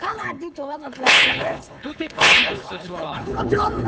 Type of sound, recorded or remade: remade